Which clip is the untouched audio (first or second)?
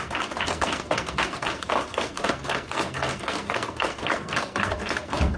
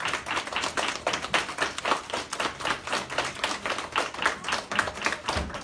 second